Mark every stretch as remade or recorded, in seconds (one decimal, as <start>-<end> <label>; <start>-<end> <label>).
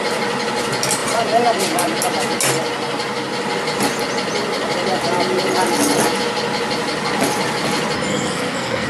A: 0.0-8.1 recorded; 8.1-8.9 remade